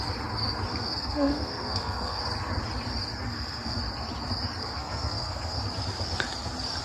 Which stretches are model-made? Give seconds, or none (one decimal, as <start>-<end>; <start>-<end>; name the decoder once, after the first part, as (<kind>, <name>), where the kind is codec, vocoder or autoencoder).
0.7-2.2 (codec, SNAC); 3.3-3.8; 4.6-5.6